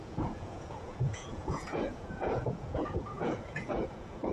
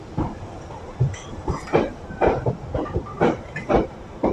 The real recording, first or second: second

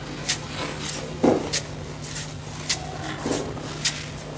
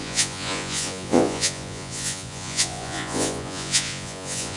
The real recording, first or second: first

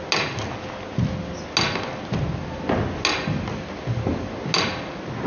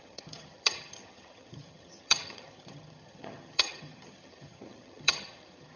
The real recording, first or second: first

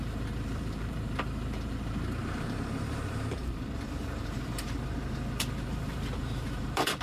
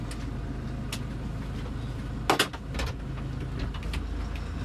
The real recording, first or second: second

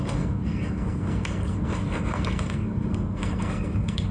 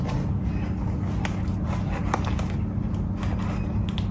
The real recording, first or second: second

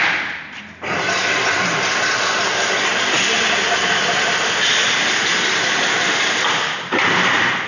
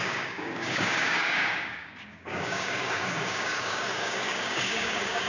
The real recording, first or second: first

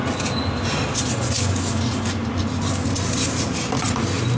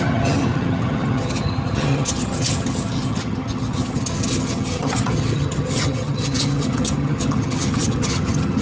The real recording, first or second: first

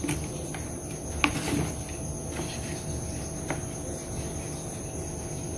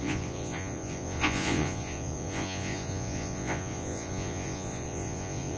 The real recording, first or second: first